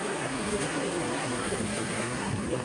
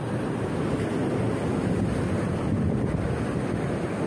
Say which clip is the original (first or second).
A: second